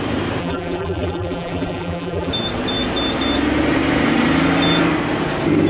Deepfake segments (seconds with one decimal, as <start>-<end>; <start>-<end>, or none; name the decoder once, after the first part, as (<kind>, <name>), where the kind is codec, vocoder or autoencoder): 0.4-2.3 (vocoder, BigVGAN v2)